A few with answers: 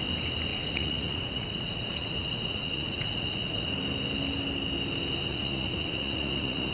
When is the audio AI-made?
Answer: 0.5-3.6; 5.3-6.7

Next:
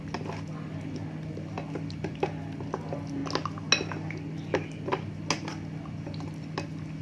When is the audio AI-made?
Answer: none